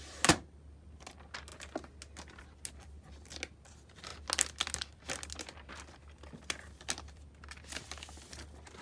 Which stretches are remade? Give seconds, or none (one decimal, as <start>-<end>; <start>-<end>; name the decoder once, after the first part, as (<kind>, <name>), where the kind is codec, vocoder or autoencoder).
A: none